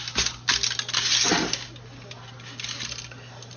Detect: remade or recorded recorded